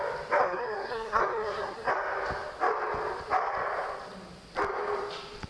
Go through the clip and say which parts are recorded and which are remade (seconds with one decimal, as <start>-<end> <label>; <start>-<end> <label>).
0.0-0.4 recorded; 0.4-1.9 remade; 1.9-5.5 recorded